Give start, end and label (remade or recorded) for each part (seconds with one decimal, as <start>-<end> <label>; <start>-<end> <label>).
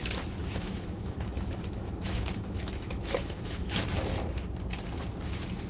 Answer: 0.0-0.4 recorded; 0.4-3.8 remade; 3.8-5.7 recorded